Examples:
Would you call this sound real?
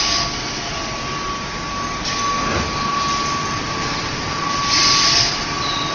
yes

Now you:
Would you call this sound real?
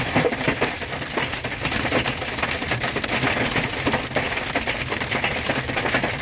yes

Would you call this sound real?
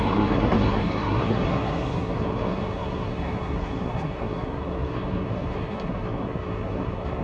no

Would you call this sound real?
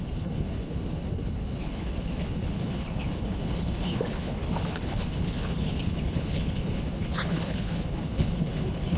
no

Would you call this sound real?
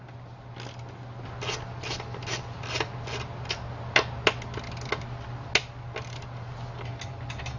yes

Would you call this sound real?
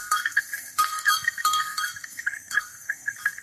no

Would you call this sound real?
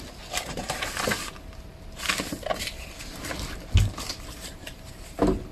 yes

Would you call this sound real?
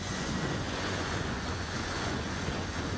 no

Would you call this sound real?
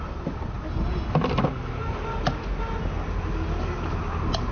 yes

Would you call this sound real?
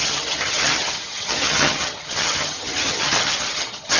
no